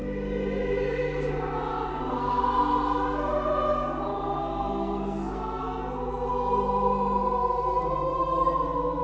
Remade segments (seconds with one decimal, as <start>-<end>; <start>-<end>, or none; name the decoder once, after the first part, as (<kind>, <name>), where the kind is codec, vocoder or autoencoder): 1.9-2.4 (codec, SNAC); 4.1-5.6